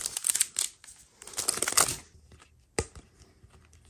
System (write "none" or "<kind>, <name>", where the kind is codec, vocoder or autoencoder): none